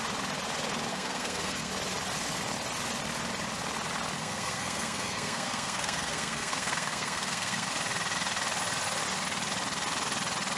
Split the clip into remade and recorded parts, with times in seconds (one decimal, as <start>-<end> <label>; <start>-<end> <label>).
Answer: 0.0-0.9 recorded; 0.9-1.7 remade; 1.7-4.2 recorded; 4.2-7.7 remade; 7.7-10.6 recorded